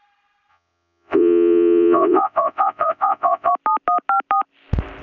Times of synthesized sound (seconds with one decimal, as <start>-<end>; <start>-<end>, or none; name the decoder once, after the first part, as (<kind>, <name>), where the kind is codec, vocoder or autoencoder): 0.5-3.5 (vocoder, WaveNeXt)